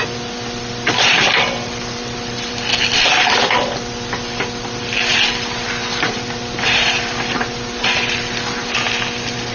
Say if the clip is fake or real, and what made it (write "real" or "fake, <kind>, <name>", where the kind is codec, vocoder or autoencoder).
fake, vocoder, BigVGAN v2